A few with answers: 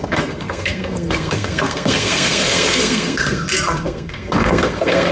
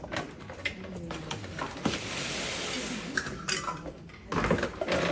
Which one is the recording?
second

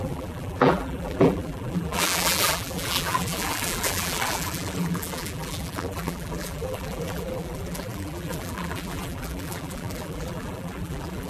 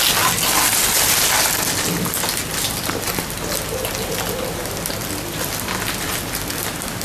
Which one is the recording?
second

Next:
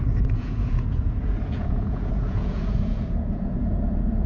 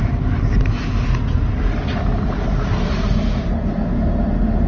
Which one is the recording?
second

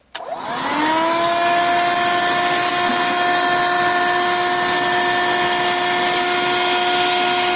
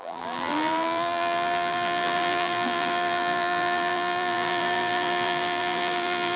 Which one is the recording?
first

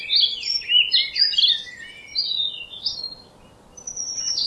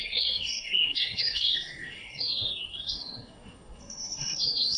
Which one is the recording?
first